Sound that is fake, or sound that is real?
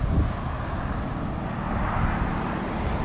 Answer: real